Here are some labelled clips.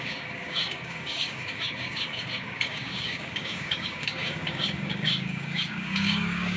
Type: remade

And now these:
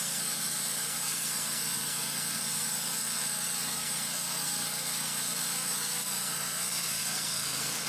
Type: remade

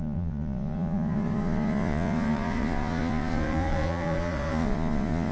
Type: remade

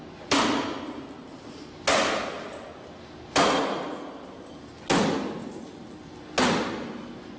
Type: recorded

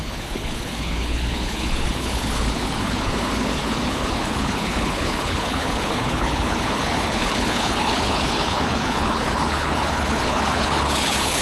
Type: remade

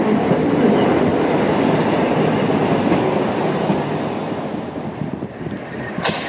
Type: recorded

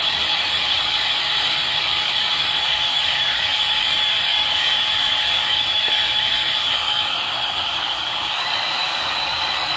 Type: remade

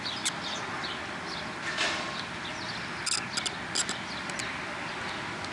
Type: recorded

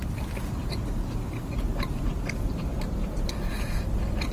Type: remade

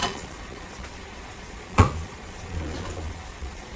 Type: remade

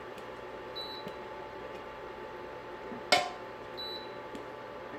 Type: recorded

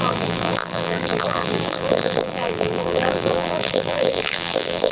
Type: remade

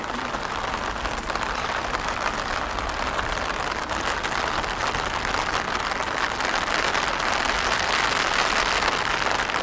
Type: recorded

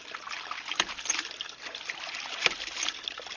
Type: recorded